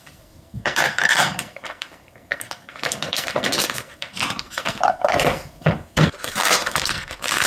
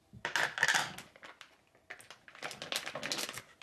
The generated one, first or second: first